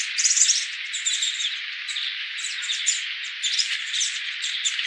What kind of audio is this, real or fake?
real